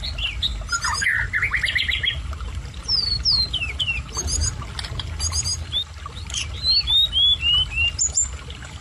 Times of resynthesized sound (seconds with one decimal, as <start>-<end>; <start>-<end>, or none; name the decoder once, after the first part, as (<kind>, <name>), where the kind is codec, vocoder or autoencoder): none